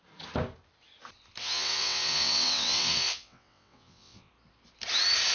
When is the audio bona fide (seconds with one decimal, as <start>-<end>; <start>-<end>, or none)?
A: 0.0-1.4; 4.3-5.3